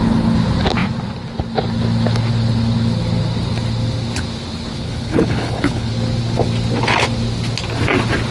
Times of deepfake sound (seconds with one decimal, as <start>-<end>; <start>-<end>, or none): 4.7-5.9